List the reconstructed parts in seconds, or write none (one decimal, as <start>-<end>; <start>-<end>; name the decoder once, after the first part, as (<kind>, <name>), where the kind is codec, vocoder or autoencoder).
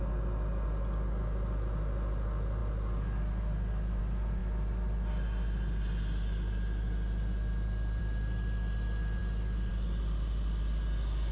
none